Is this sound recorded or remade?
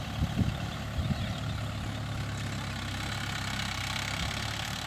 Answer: recorded